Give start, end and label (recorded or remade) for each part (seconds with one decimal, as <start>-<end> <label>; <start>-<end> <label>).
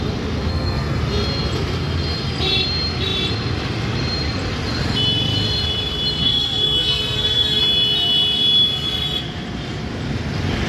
0.0-0.5 recorded; 0.5-1.0 remade; 1.0-6.2 recorded; 6.2-7.6 remade; 7.6-10.7 recorded